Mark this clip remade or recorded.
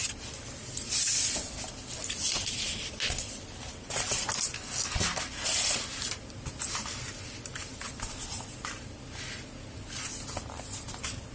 recorded